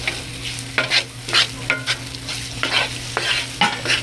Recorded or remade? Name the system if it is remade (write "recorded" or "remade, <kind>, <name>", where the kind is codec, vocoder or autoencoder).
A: recorded